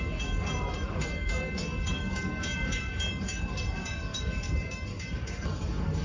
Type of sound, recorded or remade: remade